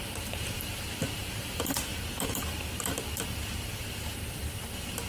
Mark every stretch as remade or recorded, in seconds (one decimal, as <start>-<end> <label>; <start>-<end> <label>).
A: 0.0-1.9 remade; 1.9-3.9 recorded; 3.9-5.1 remade